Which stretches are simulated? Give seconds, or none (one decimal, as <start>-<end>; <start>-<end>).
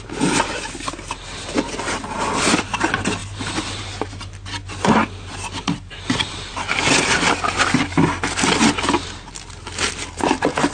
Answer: none